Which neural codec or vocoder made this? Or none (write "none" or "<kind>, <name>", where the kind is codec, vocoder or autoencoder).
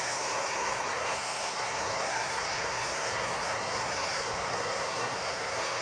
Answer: codec, SNAC